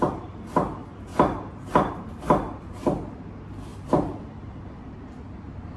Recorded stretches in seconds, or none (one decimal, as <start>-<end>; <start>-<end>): 0.0-5.8